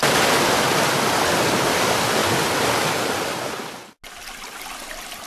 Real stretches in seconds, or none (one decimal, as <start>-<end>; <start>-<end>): 0.0-5.3